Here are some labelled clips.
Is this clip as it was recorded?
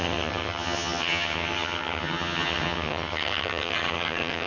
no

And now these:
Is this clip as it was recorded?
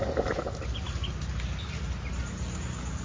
yes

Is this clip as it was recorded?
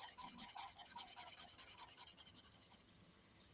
no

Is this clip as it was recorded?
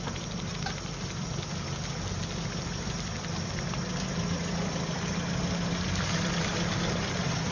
yes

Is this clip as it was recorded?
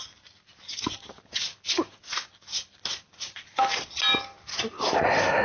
yes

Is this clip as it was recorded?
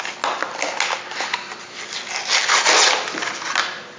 yes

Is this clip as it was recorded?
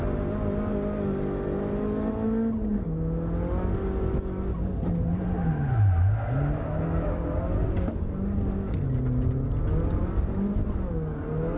yes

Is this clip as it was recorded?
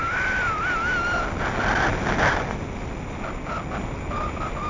yes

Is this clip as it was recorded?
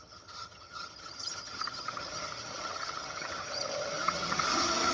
no